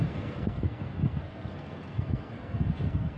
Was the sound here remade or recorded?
remade